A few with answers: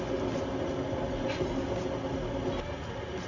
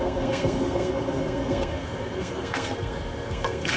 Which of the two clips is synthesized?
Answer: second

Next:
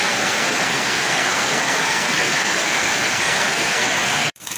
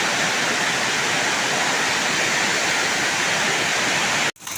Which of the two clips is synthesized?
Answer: first